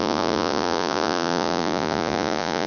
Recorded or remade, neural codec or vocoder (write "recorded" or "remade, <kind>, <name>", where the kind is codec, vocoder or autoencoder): remade, vocoder, Vocos